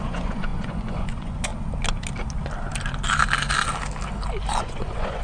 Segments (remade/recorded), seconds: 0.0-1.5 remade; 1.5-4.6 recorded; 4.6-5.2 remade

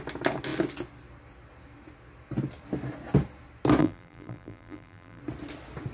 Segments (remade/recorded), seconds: 0.0-3.8 recorded; 3.8-5.2 remade; 5.2-5.9 recorded

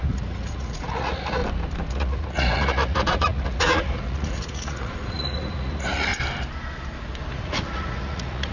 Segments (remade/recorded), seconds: 0.0-1.4 remade; 1.4-1.9 recorded; 1.9-6.1 remade; 6.1-7.3 recorded; 7.3-8.5 remade

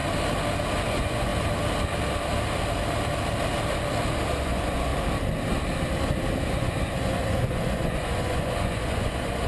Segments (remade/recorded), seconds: 0.0-0.9 recorded; 0.9-1.3 remade; 1.3-4.4 recorded; 4.4-4.9 remade; 4.9-6.4 recorded; 6.4-9.5 remade

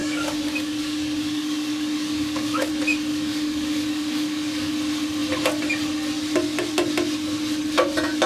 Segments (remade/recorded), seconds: 0.0-2.7 remade; 2.7-3.1 recorded; 3.1-4.7 remade; 4.7-8.3 recorded